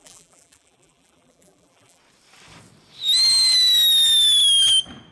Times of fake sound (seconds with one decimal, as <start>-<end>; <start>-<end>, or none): 0.0-2.0

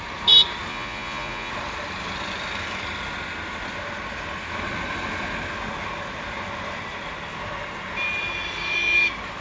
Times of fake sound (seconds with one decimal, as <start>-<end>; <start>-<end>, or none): 0.7-1.5

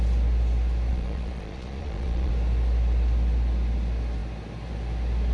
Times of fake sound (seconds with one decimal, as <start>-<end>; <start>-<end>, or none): 0.9-2.3

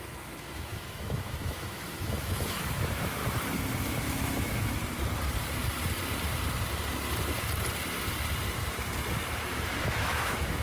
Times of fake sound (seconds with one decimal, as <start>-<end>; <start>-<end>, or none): 0.0-3.2; 3.8-4.8; 9.5-10.6

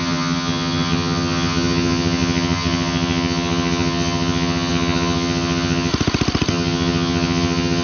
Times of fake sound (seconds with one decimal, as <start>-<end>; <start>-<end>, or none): 0.0-5.9; 6.5-7.8

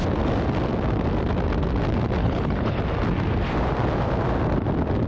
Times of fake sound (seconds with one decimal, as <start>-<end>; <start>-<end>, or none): 2.2-2.8